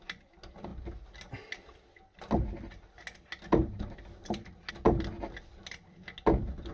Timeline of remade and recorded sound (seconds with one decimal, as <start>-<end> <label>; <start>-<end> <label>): 0.0-6.7 recorded